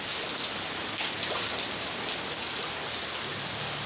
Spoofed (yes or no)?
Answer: no